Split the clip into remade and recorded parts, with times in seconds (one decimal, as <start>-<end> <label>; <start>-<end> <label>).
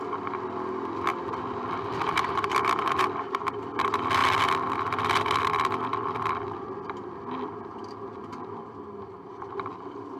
0.0-4.2 remade; 4.2-5.2 recorded; 5.2-10.2 remade